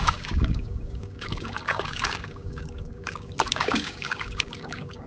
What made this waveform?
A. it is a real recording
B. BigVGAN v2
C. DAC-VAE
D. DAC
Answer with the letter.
D